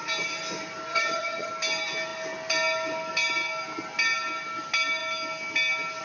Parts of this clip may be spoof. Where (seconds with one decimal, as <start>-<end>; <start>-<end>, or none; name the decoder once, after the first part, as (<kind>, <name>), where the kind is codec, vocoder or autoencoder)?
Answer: 0.9-1.5 (vocoder, HiFi-GAN)

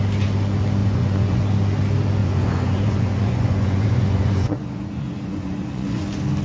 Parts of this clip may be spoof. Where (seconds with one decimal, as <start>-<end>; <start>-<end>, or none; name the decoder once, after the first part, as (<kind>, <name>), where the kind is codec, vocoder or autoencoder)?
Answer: 0.8-1.4 (vocoder, Vocos); 2.2-6.0

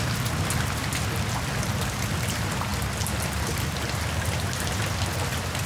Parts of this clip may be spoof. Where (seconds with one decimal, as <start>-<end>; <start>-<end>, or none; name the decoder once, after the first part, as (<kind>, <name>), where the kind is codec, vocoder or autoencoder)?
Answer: none